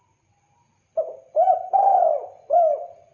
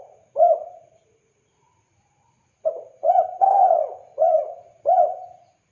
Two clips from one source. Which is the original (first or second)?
first